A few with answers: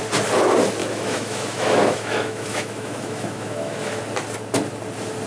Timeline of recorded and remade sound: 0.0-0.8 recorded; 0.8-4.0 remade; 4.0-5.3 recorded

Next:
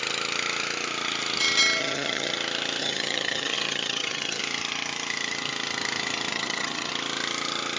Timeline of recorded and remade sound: 0.0-1.8 recorded; 1.8-2.3 remade; 2.3-2.8 recorded; 2.8-4.4 remade; 4.4-6.3 recorded; 6.3-6.9 remade; 6.9-7.8 recorded

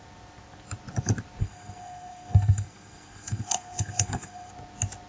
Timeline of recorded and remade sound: 0.0-1.4 recorded; 1.4-4.5 remade; 4.5-5.1 recorded

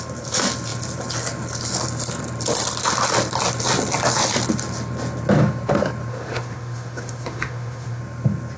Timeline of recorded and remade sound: 0.0-6.1 recorded; 6.1-8.0 remade; 8.0-8.6 recorded

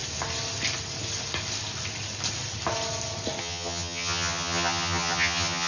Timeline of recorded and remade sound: 0.0-3.4 recorded; 3.4-5.7 remade

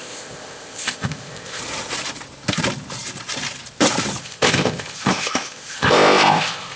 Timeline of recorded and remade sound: 0.0-1.6 remade; 1.6-4.2 recorded; 4.2-6.8 remade

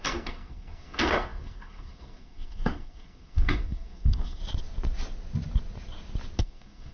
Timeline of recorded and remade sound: 0.0-4.4 remade; 4.4-6.4 recorded; 6.4-6.9 remade